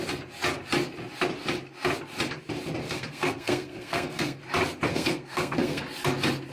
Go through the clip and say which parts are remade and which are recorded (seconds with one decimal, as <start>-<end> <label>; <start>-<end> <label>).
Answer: 0.0-2.8 recorded; 2.8-4.4 remade; 4.4-4.9 recorded; 4.9-5.8 remade; 5.8-6.5 recorded